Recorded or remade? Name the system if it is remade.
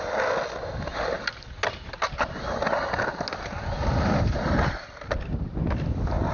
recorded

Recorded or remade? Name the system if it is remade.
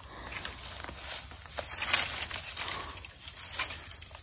recorded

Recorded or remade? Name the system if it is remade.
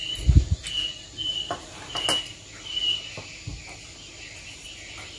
recorded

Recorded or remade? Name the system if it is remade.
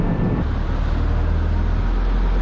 recorded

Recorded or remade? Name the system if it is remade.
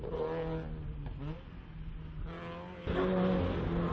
recorded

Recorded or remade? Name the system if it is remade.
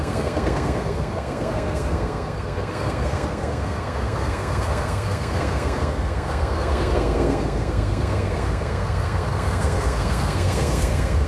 remade, codec, SNAC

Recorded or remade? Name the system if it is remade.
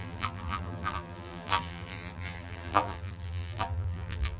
remade, vocoder, BigVGAN v2